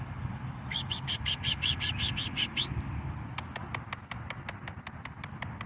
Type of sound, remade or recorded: recorded